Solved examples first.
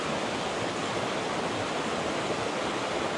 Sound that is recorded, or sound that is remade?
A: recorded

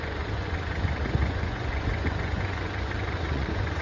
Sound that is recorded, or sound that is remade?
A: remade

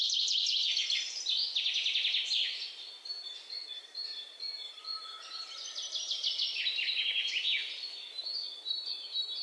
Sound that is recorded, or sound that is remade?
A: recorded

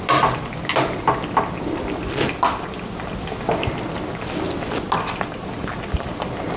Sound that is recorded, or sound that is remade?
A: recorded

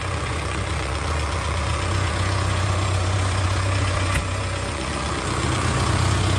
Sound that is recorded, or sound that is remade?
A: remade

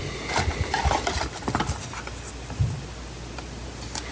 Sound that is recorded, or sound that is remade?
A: recorded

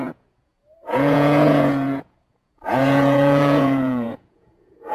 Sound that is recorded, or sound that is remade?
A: remade